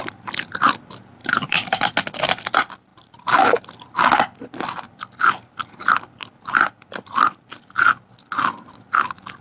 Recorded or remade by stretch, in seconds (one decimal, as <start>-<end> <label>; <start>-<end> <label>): 0.0-1.2 recorded; 1.2-1.9 remade; 1.9-2.9 recorded; 2.9-3.6 remade; 3.6-9.4 recorded